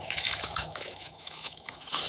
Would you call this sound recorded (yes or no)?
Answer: no